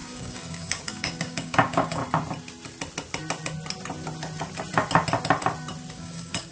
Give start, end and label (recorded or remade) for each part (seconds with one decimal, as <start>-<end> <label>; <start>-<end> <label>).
0.0-2.0 remade; 2.0-5.9 recorded; 5.9-6.5 remade

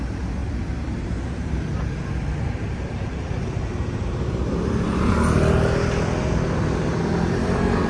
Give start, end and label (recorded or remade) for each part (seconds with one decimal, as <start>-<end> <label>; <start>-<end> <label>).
0.0-0.4 recorded; 0.4-5.1 remade; 5.1-7.9 recorded

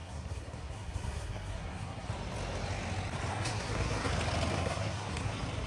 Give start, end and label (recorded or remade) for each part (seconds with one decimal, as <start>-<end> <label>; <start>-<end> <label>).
0.0-2.1 remade; 2.1-3.3 recorded; 3.3-4.1 remade; 4.1-4.5 recorded; 4.5-5.3 remade; 5.3-5.7 recorded

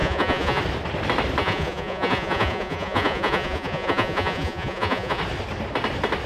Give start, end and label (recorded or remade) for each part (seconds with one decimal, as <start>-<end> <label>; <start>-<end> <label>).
0.0-0.6 remade; 0.6-1.4 recorded; 1.4-5.2 remade; 5.2-6.3 recorded

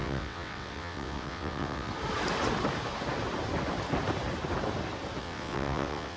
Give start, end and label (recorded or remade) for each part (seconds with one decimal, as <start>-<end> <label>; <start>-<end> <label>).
0.0-1.9 remade; 1.9-5.2 recorded; 5.2-6.2 remade

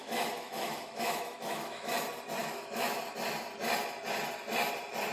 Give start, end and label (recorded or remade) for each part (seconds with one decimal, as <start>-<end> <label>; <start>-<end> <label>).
0.0-1.9 remade; 1.9-2.4 recorded; 2.4-3.0 remade; 3.0-5.1 recorded

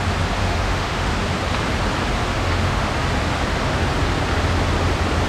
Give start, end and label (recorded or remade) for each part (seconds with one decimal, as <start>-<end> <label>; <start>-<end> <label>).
0.0-0.4 recorded; 0.4-1.1 remade; 1.1-2.2 recorded; 2.2-2.9 remade; 2.9-5.3 recorded